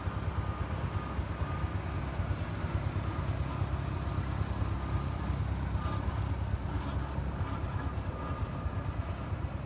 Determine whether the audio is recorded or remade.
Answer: recorded